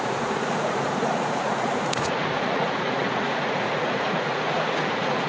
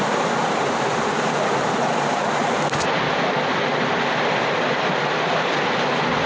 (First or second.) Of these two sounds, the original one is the second